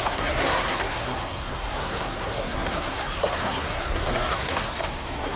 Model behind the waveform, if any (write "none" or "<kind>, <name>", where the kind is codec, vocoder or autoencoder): codec, SNAC